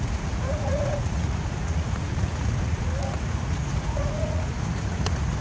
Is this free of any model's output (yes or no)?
no